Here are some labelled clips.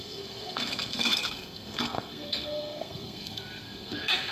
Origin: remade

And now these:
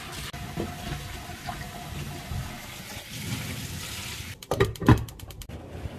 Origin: recorded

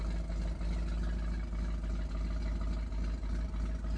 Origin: recorded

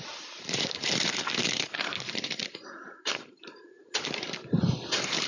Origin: remade